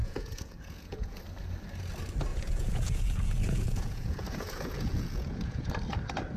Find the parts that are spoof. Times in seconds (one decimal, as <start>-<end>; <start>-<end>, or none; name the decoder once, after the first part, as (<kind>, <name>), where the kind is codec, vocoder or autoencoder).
0.0-1.2 (vocoder, Vocos); 2.3-5.7